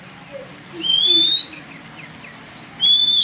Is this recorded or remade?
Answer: recorded